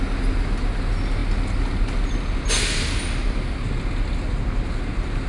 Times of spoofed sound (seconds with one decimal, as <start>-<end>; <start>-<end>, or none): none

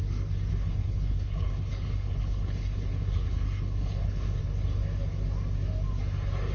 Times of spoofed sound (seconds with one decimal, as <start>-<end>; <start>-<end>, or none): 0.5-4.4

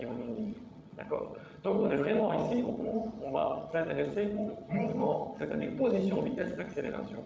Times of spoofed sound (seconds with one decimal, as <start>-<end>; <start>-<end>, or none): 0.0-7.3

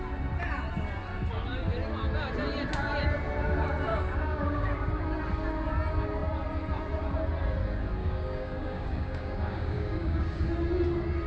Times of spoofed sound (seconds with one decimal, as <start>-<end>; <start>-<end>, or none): 3.9-4.9; 8.0-10.5

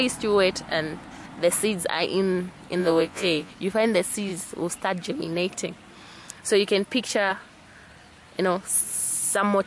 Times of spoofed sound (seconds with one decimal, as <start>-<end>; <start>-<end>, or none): 2.8-3.5

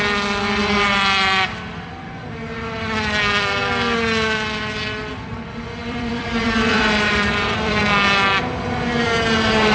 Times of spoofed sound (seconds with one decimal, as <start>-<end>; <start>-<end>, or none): 5.8-7.8

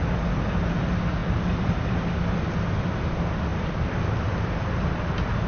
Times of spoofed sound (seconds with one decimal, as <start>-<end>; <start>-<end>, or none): 1.2-2.4; 3.5-4.8

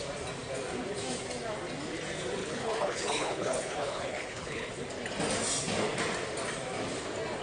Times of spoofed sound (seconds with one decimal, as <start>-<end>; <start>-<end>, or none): 2.4-4.7